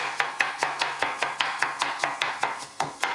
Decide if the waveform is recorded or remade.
remade